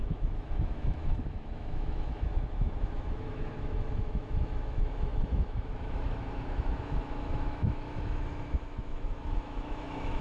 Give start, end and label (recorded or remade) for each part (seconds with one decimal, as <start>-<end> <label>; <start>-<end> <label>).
0.0-10.2 remade